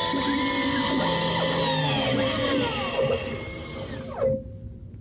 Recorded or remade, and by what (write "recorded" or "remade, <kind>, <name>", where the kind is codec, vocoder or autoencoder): recorded